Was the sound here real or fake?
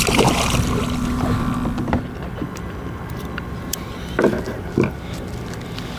fake